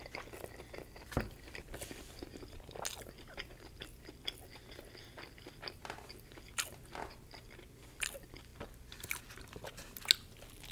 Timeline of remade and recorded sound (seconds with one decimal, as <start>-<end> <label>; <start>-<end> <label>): 0.0-10.7 recorded